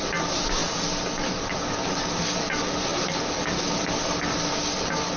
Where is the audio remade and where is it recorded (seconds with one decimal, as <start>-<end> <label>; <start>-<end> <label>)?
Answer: 0.0-5.2 recorded